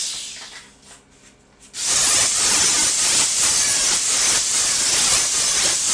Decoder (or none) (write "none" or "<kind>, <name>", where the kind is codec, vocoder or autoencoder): none